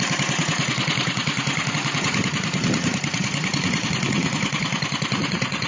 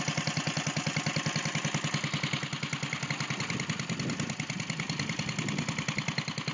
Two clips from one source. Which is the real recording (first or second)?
second